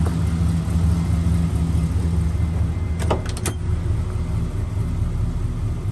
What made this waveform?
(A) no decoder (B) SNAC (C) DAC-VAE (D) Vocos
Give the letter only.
A